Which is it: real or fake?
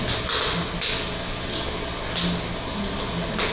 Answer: real